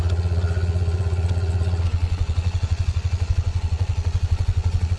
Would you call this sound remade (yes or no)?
yes